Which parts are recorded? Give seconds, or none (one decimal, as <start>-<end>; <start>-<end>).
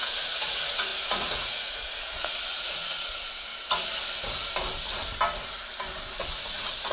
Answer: 3.5-6.2